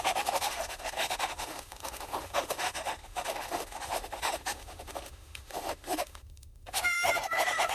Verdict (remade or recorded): remade